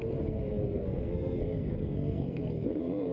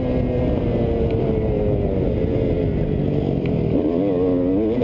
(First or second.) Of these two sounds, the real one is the second